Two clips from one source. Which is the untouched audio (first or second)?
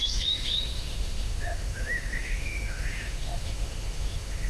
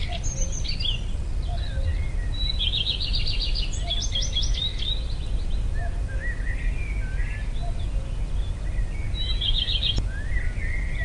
second